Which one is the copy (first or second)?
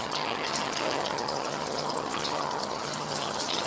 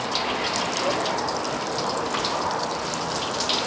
first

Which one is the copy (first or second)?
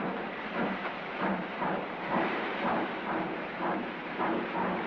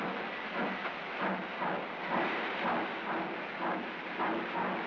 first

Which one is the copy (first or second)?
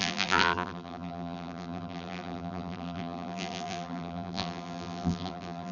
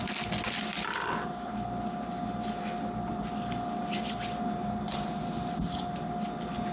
first